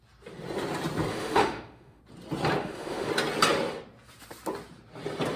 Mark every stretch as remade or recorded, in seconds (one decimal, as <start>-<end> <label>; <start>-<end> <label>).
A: 0.0-1.1 recorded; 1.1-2.0 remade; 2.0-2.6 recorded; 2.6-3.1 remade; 3.1-5.4 recorded